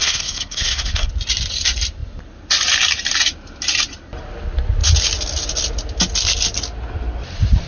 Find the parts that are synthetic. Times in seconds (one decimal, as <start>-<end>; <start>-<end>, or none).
0.0-1.1

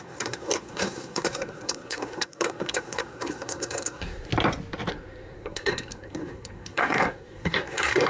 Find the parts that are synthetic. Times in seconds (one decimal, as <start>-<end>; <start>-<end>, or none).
0.0-4.3; 4.9-8.1

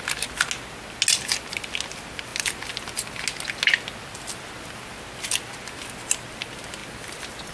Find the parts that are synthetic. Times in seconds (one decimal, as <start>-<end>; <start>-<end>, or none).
none

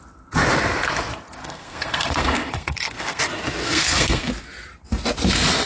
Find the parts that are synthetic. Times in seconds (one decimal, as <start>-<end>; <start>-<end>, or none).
1.4-3.2; 3.6-4.3

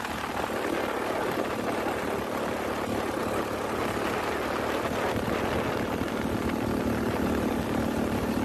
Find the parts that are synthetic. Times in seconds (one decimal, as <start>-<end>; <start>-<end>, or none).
none

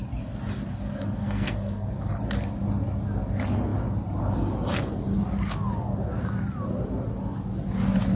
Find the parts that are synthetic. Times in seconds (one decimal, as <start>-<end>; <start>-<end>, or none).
1.2-1.9